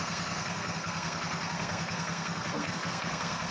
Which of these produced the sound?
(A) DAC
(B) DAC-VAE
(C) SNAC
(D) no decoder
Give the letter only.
C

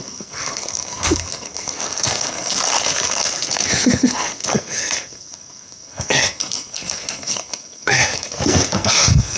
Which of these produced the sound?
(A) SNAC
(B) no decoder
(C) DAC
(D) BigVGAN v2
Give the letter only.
A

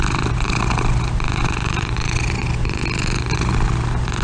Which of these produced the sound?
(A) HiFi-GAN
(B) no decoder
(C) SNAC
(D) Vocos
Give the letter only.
B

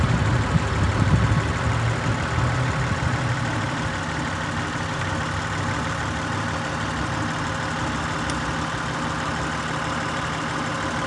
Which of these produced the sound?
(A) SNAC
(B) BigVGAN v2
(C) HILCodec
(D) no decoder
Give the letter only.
D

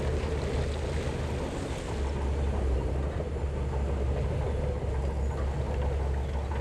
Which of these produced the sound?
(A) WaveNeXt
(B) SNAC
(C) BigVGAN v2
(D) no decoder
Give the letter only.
D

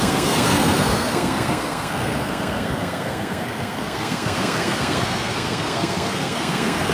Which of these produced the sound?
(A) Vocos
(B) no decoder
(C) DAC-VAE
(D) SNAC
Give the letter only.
D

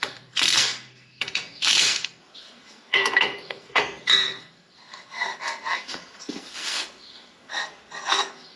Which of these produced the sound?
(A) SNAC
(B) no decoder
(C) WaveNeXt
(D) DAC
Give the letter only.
A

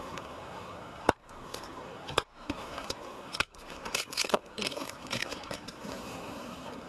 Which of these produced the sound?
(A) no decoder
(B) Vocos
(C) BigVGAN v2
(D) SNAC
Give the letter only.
D